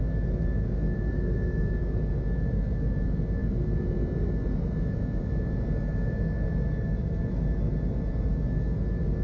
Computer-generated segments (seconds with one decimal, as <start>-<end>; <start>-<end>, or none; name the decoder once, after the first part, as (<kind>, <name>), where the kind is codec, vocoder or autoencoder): none